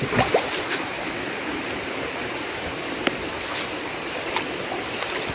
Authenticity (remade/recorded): recorded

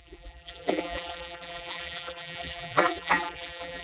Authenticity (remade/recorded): remade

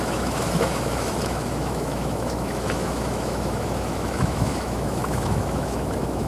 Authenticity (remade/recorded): remade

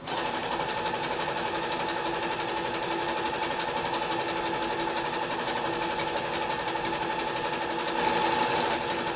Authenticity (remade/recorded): recorded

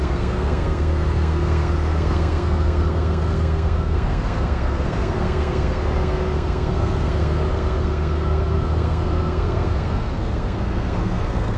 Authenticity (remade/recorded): remade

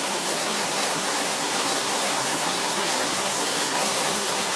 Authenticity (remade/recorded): remade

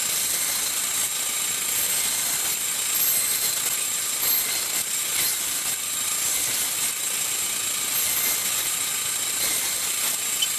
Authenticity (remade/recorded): recorded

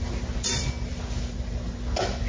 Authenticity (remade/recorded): recorded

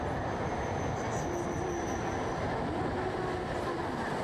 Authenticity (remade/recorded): recorded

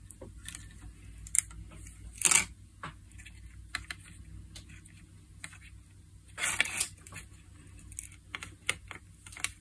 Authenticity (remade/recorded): recorded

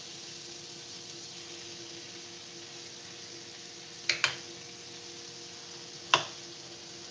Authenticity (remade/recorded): recorded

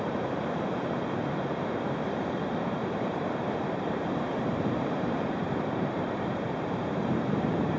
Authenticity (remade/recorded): remade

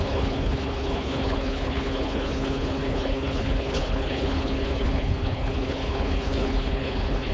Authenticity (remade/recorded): remade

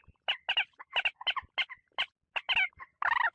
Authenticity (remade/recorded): recorded